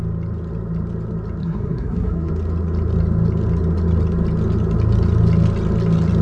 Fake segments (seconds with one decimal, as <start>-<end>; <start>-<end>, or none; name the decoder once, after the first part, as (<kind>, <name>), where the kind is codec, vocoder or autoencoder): 1.4-2.3 (codec, SNAC)